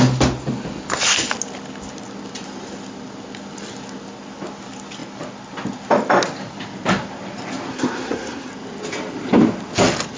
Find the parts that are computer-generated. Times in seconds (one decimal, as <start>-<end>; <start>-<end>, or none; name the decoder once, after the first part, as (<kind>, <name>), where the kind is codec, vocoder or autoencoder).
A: 7.7-8.5 (codec, SNAC)